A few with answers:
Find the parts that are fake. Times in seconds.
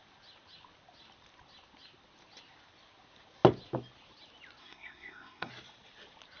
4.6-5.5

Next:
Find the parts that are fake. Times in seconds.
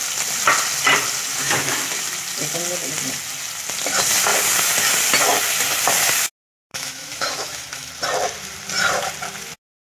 1.3-1.8; 6.7-7.9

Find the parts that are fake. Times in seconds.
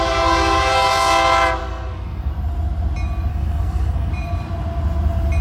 1.6-2.3; 3.3-4.1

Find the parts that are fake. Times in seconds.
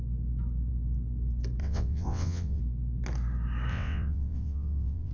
1.6-2.6; 3.7-5.1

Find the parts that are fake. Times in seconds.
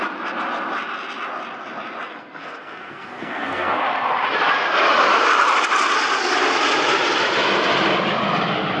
2.1-3.8